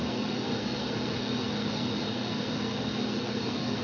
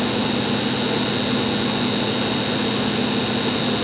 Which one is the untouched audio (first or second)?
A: second